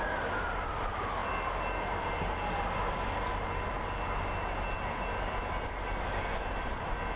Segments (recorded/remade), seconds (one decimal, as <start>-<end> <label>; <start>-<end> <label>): 0.0-7.2 recorded